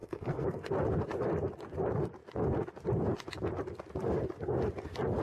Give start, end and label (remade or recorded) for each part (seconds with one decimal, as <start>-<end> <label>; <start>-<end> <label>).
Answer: 0.0-0.7 remade; 0.7-5.2 recorded